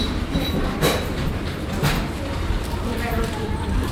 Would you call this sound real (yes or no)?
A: no